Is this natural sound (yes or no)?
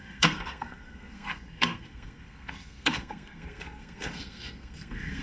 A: no